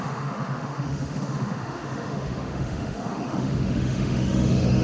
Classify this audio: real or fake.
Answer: fake